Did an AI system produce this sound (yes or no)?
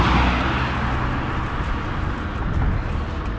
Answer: no